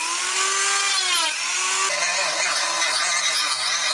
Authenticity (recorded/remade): recorded